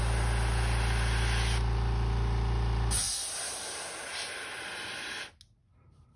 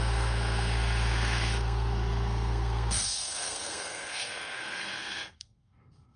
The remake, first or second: second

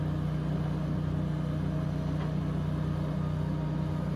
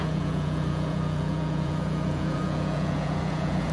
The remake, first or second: second